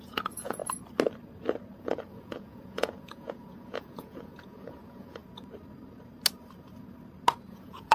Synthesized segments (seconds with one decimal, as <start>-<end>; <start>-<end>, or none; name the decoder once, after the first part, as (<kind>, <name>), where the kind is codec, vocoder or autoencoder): 0.0-0.6 (vocoder, Vocos); 1.8-5.2; 7.5-7.9